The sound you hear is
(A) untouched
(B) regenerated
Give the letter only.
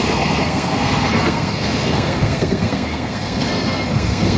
B